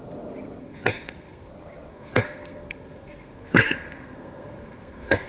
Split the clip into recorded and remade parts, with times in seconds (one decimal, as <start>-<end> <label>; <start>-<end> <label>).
0.0-0.6 recorded; 0.6-1.5 remade; 1.5-1.9 recorded; 1.9-5.3 remade